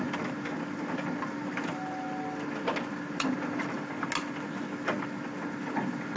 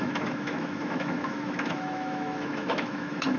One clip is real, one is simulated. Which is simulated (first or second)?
second